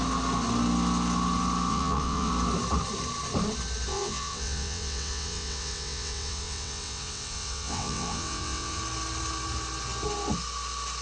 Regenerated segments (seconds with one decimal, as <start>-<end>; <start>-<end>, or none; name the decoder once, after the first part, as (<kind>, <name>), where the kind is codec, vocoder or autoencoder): 1.7-2.3 (vocoder, WaveNeXt); 3.9-8.8